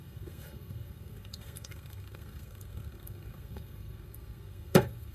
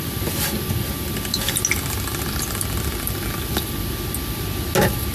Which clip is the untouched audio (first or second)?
second